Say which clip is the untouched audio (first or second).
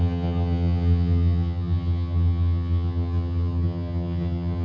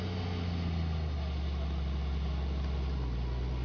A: second